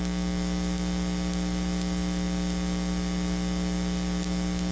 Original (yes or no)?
yes